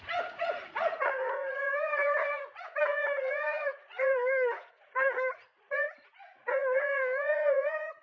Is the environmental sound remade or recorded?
remade